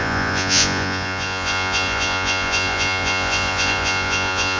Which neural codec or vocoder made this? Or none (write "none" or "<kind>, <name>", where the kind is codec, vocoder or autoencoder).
vocoder, Vocos